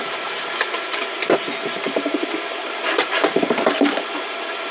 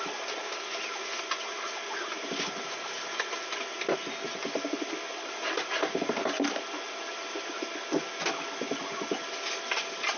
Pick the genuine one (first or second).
second